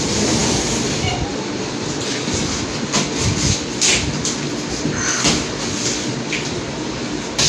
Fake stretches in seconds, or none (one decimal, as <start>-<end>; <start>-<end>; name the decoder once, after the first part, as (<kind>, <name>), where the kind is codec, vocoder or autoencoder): none